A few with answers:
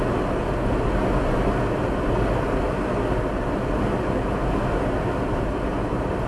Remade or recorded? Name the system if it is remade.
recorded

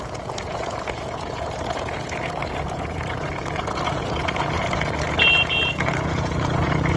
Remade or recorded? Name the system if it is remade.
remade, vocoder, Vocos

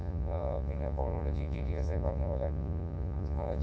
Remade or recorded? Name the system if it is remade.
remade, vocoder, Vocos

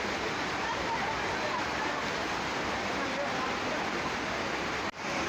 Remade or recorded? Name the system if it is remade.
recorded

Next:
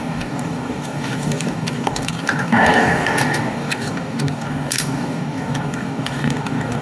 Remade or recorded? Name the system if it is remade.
remade, codec, DAC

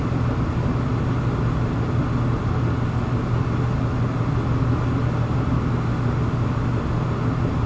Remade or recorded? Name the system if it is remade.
recorded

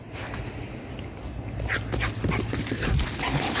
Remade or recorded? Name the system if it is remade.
recorded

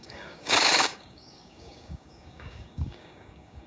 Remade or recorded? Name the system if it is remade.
remade, codec, DAC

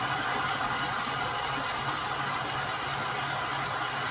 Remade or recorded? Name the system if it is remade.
recorded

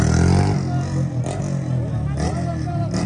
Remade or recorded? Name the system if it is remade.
recorded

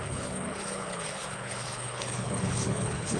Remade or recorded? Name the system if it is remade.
remade, codec, HILCodec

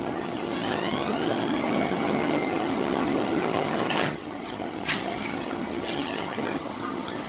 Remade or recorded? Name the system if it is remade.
remade, vocoder, HiFi-GAN